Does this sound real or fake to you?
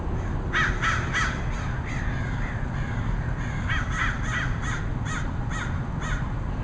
real